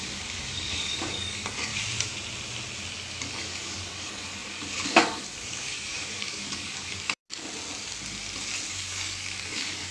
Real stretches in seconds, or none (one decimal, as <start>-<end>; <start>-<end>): 1.7-3.3; 7.2-8.7